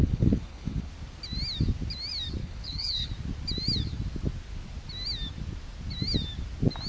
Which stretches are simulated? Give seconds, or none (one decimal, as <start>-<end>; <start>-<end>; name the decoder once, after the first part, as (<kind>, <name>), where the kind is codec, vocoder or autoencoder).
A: 0.0-0.9 (codec, HILCodec); 2.4-3.1